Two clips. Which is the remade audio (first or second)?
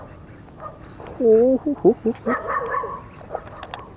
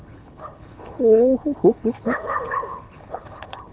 second